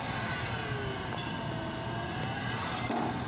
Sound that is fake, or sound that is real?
real